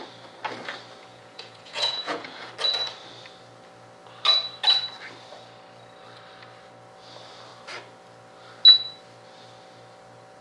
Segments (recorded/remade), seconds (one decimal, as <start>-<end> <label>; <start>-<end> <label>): 0.0-1.1 recorded; 1.1-2.5 remade; 2.5-10.4 recorded